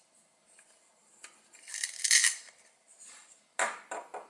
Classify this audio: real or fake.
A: real